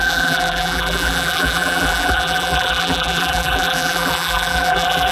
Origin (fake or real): fake